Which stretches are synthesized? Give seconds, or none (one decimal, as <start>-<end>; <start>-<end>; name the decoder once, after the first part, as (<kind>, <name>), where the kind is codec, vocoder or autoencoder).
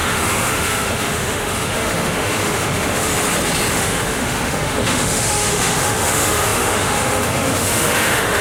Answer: 0.0-3.1 (autoencoder, DAC-VAE); 3.7-8.4